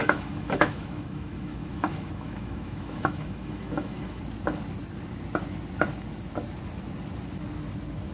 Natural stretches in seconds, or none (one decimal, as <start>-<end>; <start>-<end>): 4.2-8.1